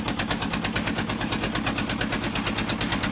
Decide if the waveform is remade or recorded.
recorded